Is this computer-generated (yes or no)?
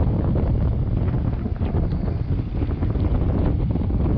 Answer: no